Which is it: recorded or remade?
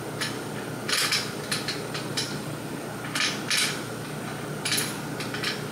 recorded